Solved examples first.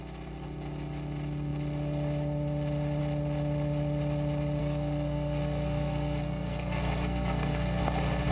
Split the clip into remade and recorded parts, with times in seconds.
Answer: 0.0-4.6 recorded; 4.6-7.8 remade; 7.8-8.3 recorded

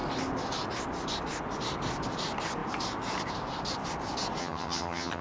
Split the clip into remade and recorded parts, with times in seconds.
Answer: 0.0-4.4 recorded; 4.4-5.2 remade

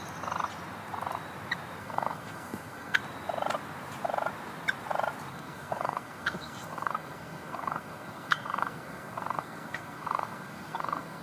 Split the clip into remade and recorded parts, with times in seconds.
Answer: 0.0-1.8 recorded; 1.8-3.0 remade; 3.0-5.3 recorded; 5.3-11.2 remade

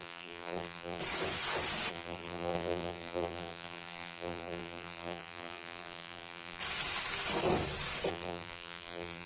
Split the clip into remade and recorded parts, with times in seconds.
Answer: 0.0-1.0 remade; 1.0-1.9 recorded; 1.9-6.6 remade; 6.6-8.1 recorded; 8.1-9.3 remade

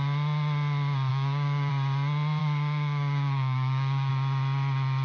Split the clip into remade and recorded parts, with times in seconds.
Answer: 0.0-1.1 recorded; 1.1-1.7 remade; 1.7-2.4 recorded; 2.4-4.1 remade; 4.1-5.0 recorded

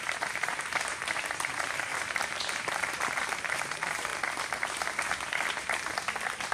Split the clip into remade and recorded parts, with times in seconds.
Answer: 0.0-4.1 remade; 4.1-6.5 recorded

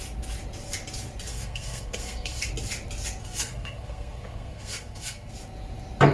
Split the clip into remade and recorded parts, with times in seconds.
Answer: 0.0-1.3 recorded; 1.3-2.5 remade; 2.5-3.2 recorded; 3.2-5.3 remade; 5.3-6.1 recorded